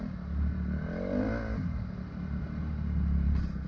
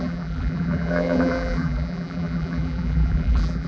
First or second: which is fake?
second